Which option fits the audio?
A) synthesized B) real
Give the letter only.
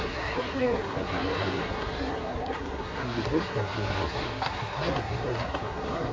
A